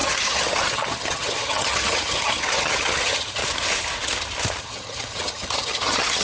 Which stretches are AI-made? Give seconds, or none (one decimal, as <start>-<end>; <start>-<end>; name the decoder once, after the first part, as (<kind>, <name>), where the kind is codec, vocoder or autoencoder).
0.0-3.4 (vocoder, HiFi-GAN); 4.6-6.2

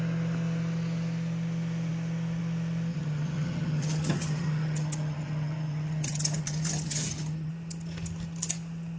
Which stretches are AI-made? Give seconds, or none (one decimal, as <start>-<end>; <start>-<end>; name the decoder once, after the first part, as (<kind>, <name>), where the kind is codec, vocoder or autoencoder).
2.9-7.5 (vocoder, HiFi-GAN)